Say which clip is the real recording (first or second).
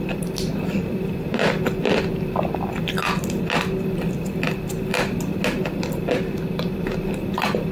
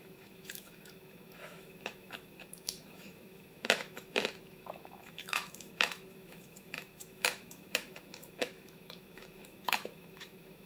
first